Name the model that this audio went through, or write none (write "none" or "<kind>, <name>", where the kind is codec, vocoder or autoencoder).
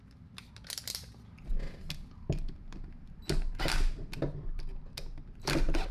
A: none